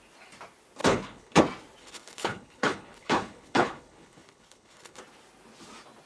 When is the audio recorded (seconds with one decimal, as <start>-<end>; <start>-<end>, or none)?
0.0-0.8; 1.4-1.8; 5.0-6.1